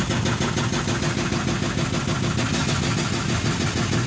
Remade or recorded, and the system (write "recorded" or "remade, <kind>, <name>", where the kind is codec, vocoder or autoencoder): recorded